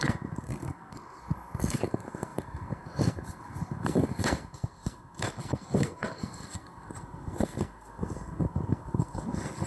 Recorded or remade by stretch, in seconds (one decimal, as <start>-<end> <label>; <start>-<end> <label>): 0.0-9.7 remade

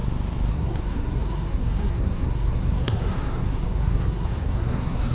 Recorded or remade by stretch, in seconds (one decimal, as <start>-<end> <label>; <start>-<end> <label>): 0.0-0.5 recorded; 0.5-5.1 remade